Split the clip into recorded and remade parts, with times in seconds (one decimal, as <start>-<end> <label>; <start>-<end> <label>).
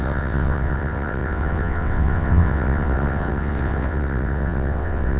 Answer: 0.0-5.2 remade